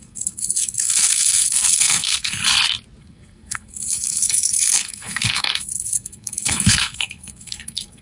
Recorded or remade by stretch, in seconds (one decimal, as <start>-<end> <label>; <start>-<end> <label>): 0.0-2.4 remade; 2.4-3.0 recorded; 3.0-8.0 remade